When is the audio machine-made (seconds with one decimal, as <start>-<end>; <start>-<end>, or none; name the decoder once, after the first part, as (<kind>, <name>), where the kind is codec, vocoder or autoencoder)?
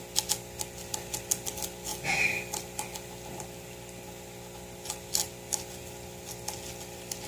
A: none